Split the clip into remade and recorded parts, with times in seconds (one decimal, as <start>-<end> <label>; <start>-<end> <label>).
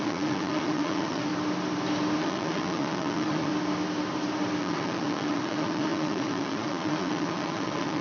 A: 0.0-1.3 remade; 1.3-2.2 recorded; 2.2-3.5 remade; 3.5-4.6 recorded; 4.6-8.0 remade